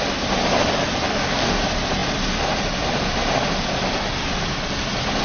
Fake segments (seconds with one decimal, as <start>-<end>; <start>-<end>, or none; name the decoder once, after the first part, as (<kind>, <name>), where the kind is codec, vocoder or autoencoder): 1.1-1.6 (codec, DAC)